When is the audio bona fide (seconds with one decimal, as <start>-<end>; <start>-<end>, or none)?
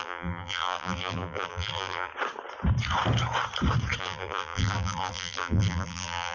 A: 2.1-4.0